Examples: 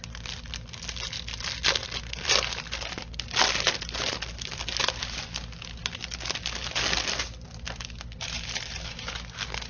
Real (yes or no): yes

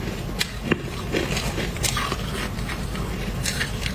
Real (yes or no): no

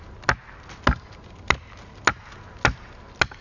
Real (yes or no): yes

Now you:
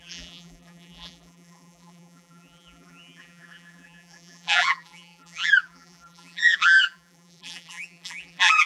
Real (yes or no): no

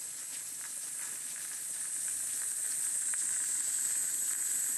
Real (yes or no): yes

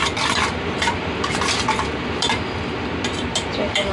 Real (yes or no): no